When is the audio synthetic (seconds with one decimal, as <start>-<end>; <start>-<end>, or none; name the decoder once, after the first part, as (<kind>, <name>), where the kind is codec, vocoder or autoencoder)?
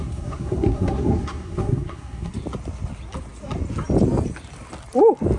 0.0-2.3 (codec, SNAC)